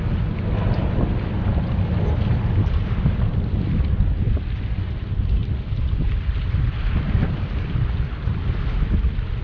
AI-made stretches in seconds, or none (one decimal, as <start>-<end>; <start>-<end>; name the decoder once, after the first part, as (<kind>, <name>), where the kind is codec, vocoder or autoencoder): none